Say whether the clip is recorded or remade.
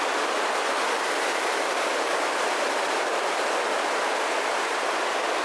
recorded